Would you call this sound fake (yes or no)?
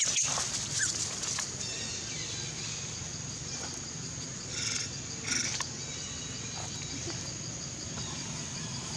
no